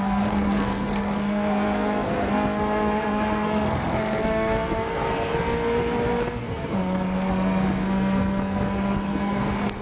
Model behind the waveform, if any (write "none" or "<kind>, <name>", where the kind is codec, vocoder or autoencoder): codec, SNAC